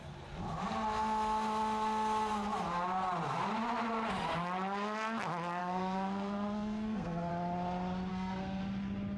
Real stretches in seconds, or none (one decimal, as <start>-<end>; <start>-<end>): 0.0-5.6; 7.3-8.1; 8.6-9.2